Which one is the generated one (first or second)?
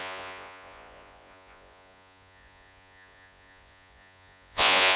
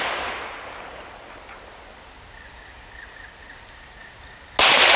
first